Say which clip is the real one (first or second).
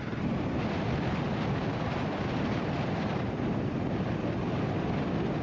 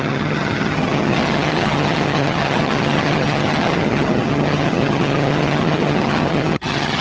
first